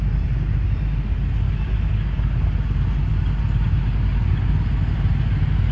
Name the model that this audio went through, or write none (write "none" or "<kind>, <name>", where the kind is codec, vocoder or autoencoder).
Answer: none